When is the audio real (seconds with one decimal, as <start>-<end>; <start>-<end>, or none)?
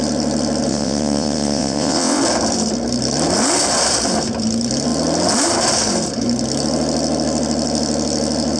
0.0-0.7; 2.2-8.6